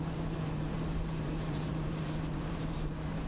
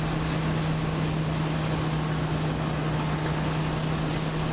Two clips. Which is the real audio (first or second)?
second